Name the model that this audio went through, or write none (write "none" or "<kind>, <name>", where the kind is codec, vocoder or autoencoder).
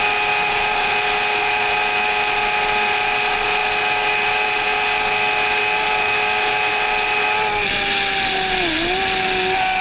none